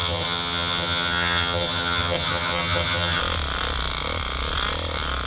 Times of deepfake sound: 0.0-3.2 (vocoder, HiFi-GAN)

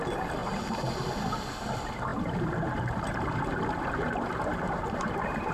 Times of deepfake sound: 2.1-5.5 (vocoder, BigVGAN v2)

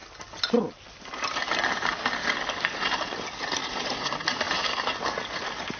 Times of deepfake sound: 2.2-3.0 (vocoder, BigVGAN v2); 3.6-4.8